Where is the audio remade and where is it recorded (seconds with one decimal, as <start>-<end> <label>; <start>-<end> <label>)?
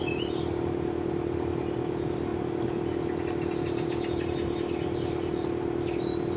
0.0-6.4 recorded